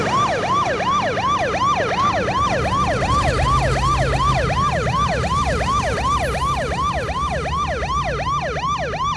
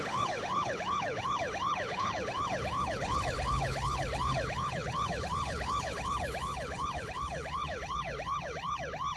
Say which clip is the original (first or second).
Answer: first